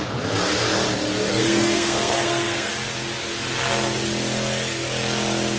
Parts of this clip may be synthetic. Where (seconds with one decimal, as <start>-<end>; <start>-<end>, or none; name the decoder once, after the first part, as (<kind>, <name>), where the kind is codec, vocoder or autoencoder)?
1.3-2.7 (codec, SNAC)